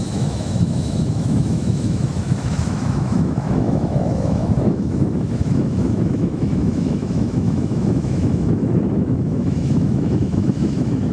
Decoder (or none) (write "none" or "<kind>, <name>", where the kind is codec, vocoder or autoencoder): autoencoder, DAC-VAE